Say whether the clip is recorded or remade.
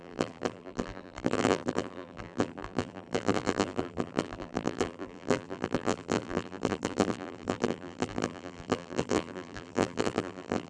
remade